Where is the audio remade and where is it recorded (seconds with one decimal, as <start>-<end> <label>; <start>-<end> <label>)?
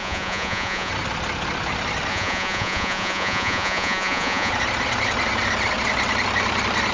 0.0-0.9 remade; 0.9-2.1 recorded; 2.1-4.5 remade; 4.5-6.9 recorded